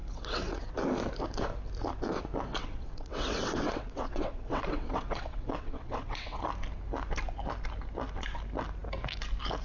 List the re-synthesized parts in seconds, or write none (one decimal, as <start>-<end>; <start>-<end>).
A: 0.0-0.7; 2.6-6.4